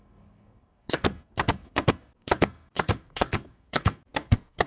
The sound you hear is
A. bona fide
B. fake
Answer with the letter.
B